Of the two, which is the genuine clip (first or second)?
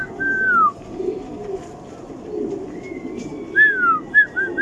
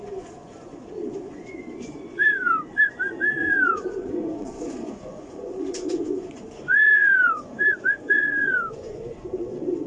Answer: first